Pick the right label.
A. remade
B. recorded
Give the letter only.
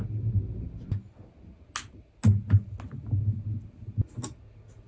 B